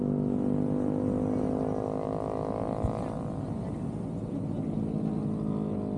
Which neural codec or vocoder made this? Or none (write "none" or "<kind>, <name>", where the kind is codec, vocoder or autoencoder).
none